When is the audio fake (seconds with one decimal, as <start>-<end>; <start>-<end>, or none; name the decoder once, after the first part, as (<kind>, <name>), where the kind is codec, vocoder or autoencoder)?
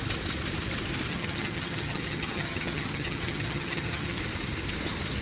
1.1-4.2 (vocoder, HiFi-GAN)